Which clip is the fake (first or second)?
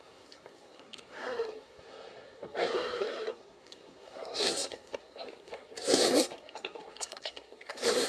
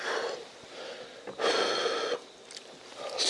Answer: first